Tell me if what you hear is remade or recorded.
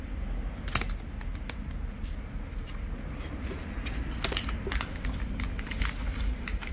recorded